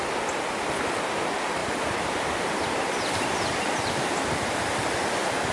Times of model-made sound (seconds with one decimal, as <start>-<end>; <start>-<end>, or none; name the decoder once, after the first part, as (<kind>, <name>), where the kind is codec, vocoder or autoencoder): 1.6-2.4 (vocoder, BigVGAN v2)